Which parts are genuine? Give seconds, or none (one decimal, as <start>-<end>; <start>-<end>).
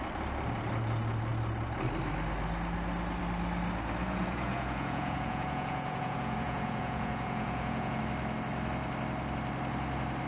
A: 0.0-4.0; 8.0-10.3